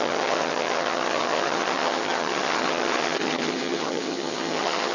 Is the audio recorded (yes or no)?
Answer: no